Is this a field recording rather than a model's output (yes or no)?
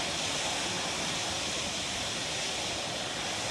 no